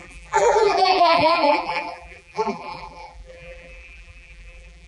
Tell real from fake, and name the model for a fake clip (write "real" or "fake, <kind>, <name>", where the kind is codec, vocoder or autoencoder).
fake, vocoder, BigVGAN v2